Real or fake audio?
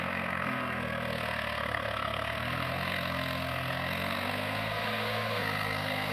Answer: fake